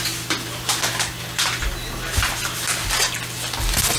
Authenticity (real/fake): real